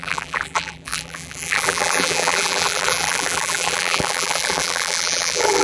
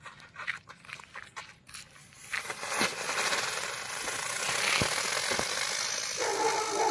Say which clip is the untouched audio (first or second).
second